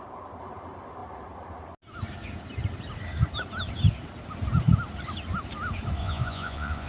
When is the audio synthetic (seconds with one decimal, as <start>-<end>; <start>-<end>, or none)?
6.0-6.9